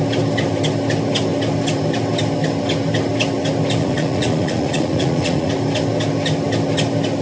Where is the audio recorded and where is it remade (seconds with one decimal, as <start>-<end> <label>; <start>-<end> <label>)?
0.0-3.8 recorded; 3.8-5.5 remade; 5.5-7.2 recorded